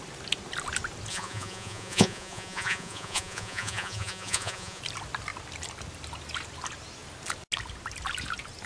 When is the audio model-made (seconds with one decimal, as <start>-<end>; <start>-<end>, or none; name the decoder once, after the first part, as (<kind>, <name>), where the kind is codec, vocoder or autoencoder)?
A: 1.1-4.8 (vocoder, Vocos)

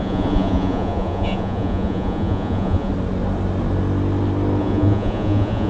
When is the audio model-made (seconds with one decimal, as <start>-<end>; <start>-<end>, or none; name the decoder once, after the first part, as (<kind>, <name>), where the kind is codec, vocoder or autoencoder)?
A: 0.0-2.9 (vocoder, Vocos); 4.6-5.7

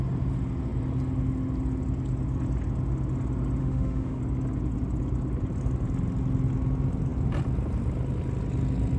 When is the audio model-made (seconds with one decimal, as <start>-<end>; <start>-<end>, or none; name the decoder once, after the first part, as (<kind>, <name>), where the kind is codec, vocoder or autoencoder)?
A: 3.6-4.2 (autoencoder, DAC-VAE)

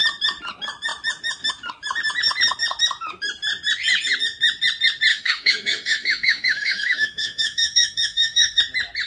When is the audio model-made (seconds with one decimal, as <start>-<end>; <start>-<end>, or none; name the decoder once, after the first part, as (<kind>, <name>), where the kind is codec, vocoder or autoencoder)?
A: 5.1-8.6 (autoencoder, DAC-VAE)

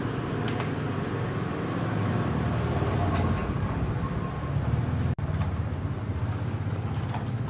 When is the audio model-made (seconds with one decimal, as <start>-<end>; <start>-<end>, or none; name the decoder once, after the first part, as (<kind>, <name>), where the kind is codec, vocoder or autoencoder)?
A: 0.0-3.4 (vocoder, BigVGAN v2); 5.3-6.2